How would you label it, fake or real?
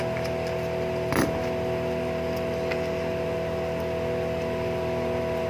real